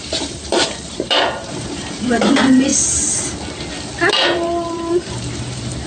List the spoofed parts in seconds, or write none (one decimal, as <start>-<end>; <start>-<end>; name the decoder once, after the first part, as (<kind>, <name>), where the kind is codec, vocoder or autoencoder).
0.0-2.7 (vocoder, BigVGAN v2); 4.1-5.9